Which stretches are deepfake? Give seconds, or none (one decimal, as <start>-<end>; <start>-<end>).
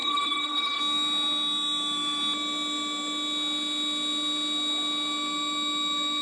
0.0-0.8